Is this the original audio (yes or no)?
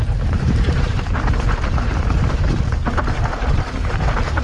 no